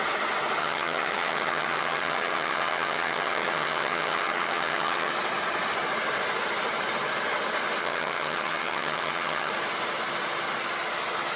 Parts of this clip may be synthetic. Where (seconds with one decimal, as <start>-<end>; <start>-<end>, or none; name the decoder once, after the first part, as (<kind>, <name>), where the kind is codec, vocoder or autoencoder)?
0.6-5.1 (vocoder, HiFi-GAN); 7.8-9.5